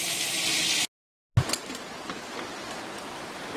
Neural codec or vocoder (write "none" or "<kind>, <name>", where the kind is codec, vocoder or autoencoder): none